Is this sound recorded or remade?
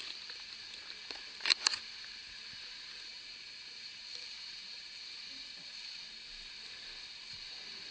recorded